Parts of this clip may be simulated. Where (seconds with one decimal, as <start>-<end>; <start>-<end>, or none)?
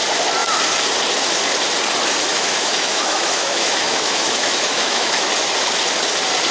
2.3-5.3